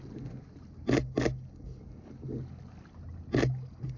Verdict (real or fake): real